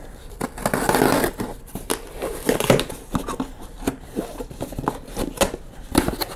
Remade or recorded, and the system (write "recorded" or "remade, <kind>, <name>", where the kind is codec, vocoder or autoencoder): recorded